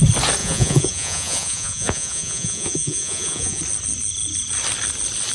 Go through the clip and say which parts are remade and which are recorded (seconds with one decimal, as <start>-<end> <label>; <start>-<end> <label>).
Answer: 0.0-0.4 recorded; 0.4-3.6 remade; 3.6-5.3 recorded